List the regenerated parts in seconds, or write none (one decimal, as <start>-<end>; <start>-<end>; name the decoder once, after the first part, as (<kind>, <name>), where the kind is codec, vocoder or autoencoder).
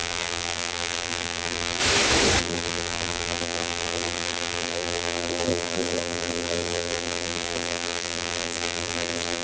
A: 0.0-1.8 (vocoder, BigVGAN v2); 2.4-9.4